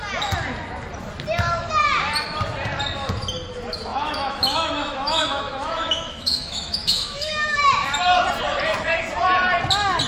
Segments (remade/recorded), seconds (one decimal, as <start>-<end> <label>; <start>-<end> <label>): 0.0-3.9 recorded; 3.9-7.6 remade; 7.6-10.1 recorded